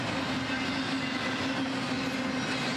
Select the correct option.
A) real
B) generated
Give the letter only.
A